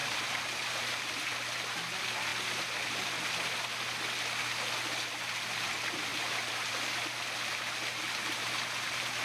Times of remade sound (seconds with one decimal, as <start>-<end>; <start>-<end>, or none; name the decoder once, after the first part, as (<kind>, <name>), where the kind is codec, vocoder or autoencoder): 0.0-1.3 (vocoder, BigVGAN v2); 6.1-6.7